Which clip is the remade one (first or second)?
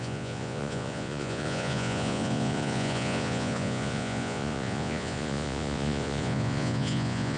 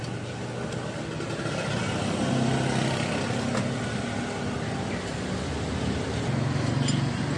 first